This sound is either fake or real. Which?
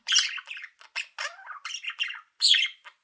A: real